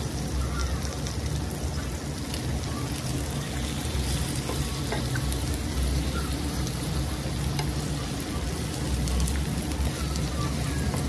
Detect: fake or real real